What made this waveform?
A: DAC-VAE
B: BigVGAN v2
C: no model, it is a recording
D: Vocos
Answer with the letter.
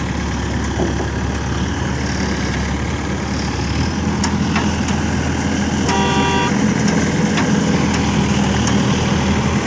C